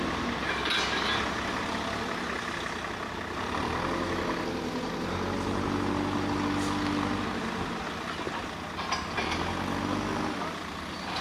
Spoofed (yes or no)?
no